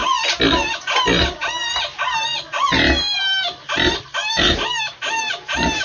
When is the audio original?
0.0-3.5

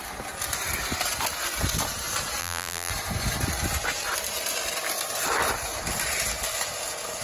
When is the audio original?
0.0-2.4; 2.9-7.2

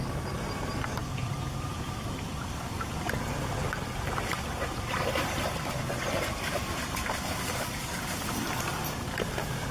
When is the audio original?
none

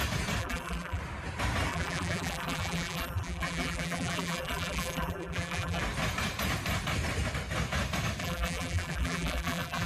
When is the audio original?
0.0-0.4; 1.0-1.7; 5.8-8.2

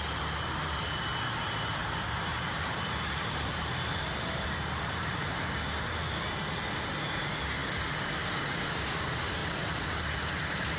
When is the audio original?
0.0-1.8; 5.5-9.4; 10.1-10.8

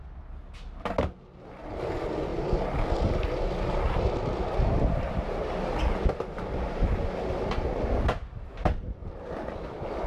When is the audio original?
0.0-2.3; 5.1-9.0